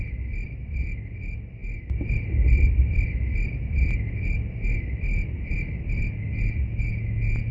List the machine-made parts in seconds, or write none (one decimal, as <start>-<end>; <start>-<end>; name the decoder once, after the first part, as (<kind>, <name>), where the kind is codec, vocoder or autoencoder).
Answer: 6.3-7.5 (vocoder, Vocos)